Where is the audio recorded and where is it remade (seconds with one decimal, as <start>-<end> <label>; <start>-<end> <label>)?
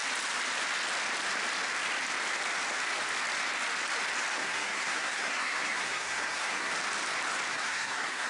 0.0-4.4 recorded; 4.4-6.7 remade; 6.7-7.5 recorded; 7.5-8.3 remade